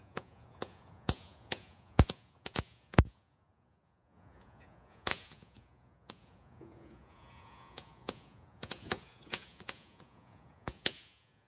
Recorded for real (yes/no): no